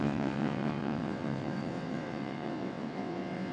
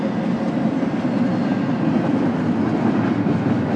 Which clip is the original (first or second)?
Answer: second